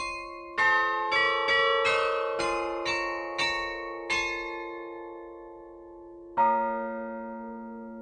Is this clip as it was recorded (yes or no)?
yes